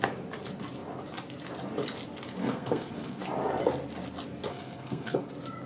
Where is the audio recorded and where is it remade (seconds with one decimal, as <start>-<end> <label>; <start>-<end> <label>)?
0.0-2.4 recorded; 2.4-3.2 remade; 3.2-4.5 recorded; 4.5-5.3 remade; 5.3-5.7 recorded